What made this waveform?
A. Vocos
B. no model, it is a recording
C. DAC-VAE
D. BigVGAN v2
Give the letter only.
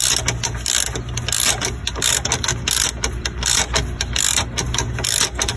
B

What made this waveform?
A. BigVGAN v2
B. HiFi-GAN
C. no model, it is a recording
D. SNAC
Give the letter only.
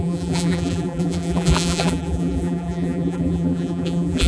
A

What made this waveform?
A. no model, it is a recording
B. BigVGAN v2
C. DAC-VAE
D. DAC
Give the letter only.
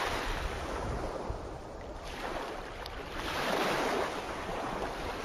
A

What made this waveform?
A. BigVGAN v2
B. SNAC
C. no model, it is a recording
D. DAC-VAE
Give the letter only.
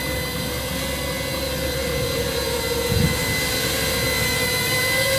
C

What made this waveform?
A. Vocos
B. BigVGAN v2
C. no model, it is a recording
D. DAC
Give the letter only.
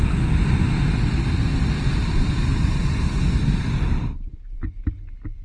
C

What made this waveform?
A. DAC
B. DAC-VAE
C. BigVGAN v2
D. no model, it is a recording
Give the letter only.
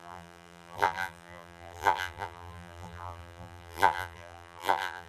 C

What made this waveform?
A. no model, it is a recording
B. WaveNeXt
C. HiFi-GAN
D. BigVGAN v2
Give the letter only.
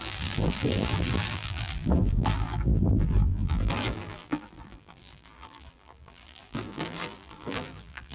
D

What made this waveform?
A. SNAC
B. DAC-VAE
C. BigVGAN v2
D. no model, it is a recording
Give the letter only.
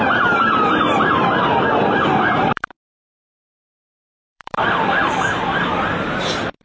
C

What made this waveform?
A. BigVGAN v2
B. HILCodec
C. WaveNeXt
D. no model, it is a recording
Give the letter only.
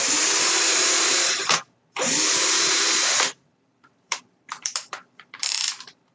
A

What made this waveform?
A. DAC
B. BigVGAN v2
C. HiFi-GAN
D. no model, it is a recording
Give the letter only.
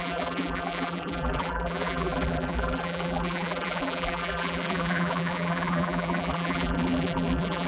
B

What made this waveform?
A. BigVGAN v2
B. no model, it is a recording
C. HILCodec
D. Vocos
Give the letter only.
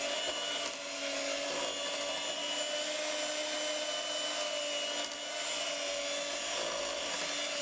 B